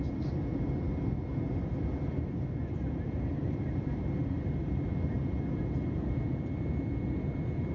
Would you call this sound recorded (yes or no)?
yes